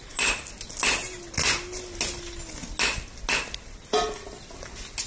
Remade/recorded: recorded